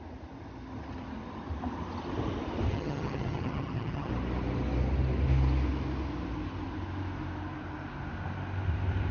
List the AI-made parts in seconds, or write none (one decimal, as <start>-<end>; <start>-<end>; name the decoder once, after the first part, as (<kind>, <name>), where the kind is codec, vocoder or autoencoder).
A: 2.7-4.1 (vocoder, HiFi-GAN)